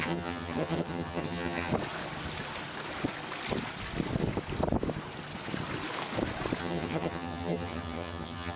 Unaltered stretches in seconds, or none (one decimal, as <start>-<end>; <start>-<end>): 1.7-6.6